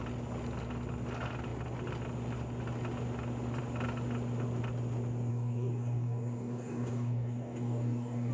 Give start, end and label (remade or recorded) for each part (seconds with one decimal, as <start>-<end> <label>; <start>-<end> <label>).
0.0-5.3 recorded; 5.3-8.3 remade